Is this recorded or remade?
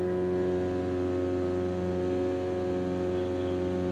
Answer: recorded